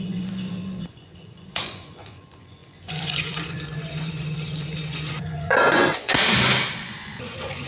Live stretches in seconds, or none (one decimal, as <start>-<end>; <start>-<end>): 6.1-6.7